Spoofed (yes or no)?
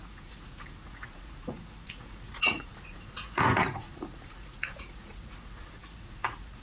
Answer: yes